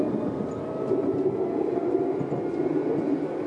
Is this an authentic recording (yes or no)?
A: yes